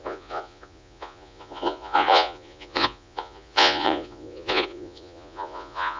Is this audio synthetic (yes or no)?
yes